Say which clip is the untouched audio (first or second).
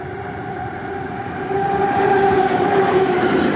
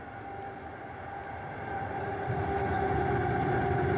second